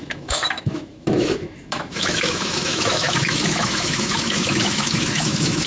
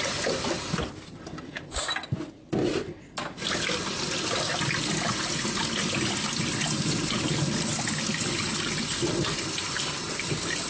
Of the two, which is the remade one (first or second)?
first